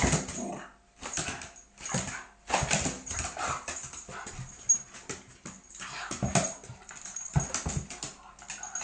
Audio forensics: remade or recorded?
recorded